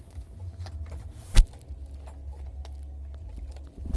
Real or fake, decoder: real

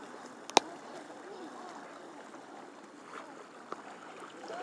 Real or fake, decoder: real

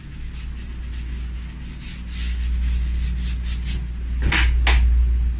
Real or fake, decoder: real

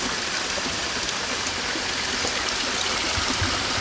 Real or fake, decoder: real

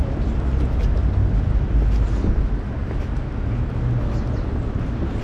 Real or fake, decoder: real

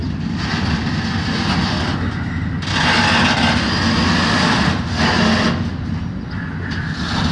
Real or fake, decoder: real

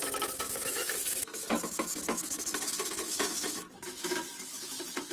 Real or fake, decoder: fake, autoencoder, DAC-VAE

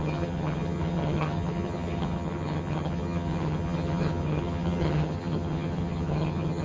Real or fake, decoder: fake, vocoder, HiFi-GAN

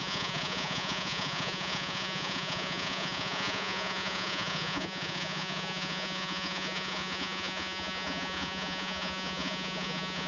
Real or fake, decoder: fake, vocoder, Vocos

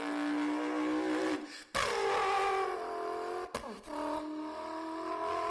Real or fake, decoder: real